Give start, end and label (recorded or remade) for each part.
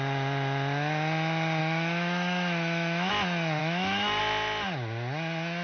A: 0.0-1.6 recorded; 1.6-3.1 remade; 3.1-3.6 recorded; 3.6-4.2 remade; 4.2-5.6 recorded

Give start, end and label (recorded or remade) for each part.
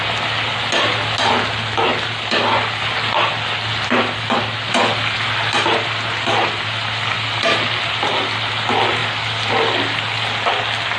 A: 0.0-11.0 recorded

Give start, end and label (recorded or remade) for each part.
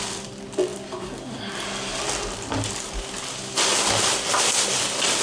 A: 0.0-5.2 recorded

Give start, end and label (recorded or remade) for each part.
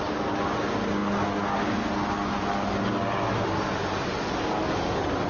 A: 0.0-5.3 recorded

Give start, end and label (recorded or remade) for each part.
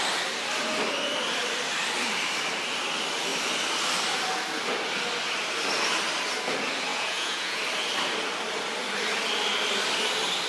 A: 0.0-6.9 recorded; 6.9-7.6 remade; 7.6-10.5 recorded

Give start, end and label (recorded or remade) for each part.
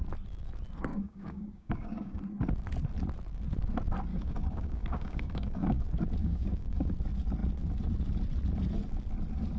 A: 0.0-0.9 recorded; 0.9-2.2 remade; 2.2-4.1 recorded; 4.1-5.8 remade; 5.8-6.2 recorded; 6.2-6.9 remade; 6.9-9.6 recorded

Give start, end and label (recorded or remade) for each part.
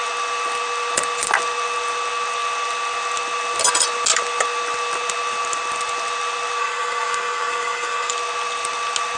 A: 0.0-6.6 recorded; 6.6-8.1 remade; 8.1-9.2 recorded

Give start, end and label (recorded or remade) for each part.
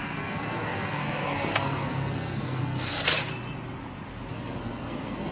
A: 0.0-3.1 remade; 3.1-4.3 recorded; 4.3-5.3 remade